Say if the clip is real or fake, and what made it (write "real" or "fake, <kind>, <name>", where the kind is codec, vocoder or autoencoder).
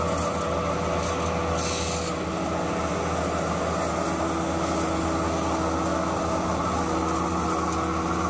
real